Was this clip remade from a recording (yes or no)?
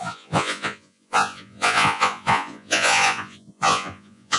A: yes